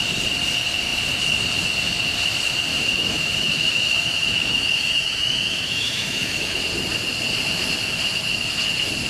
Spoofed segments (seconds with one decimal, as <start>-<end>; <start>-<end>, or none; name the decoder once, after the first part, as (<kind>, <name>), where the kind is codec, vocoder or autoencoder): 2.7-6.6 (autoencoder, DAC-VAE)